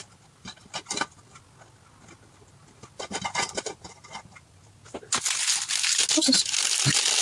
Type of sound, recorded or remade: recorded